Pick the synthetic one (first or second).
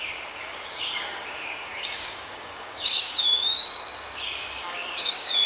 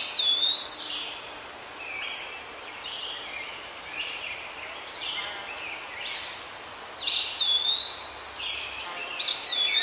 first